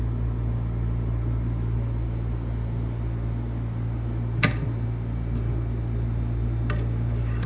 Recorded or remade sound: recorded